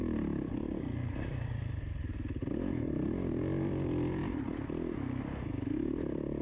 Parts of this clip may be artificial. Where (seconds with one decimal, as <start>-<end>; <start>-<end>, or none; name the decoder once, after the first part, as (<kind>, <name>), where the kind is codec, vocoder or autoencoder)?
none